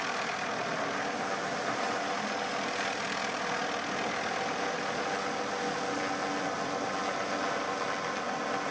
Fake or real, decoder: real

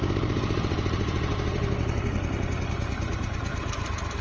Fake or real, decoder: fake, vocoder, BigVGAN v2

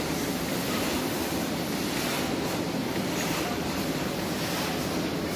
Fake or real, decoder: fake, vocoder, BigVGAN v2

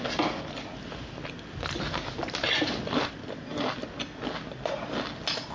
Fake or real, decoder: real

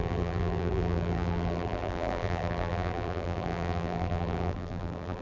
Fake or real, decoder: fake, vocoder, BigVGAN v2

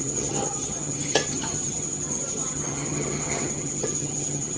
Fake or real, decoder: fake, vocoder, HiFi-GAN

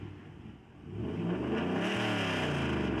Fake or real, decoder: real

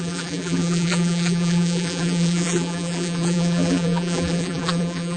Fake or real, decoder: fake, vocoder, BigVGAN v2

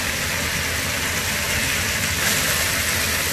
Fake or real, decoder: real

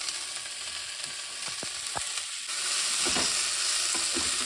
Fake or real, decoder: real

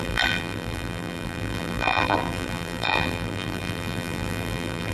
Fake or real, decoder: fake, vocoder, BigVGAN v2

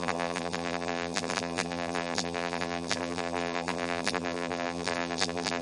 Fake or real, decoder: fake, vocoder, BigVGAN v2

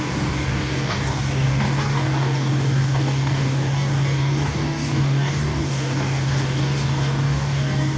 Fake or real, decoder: fake, codec, DAC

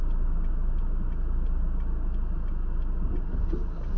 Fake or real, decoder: real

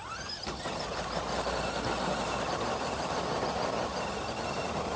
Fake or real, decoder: real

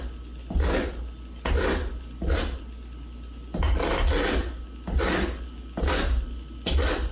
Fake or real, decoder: real